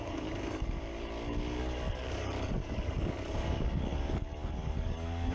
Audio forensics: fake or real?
fake